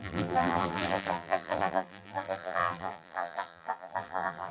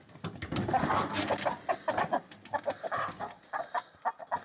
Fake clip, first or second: first